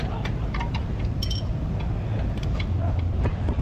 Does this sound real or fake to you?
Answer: real